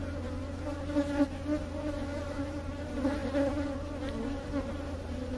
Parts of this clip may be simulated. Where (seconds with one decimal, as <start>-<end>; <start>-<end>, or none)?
none